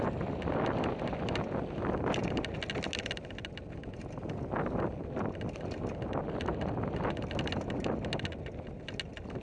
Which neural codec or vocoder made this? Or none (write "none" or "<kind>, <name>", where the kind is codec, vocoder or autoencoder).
none